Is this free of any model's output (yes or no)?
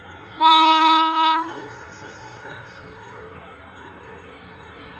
no